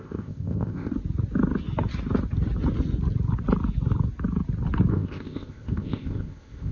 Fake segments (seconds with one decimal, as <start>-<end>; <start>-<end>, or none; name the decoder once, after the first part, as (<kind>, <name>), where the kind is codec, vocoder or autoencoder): 0.0-0.9 (codec, ZipCodec); 4.9-6.7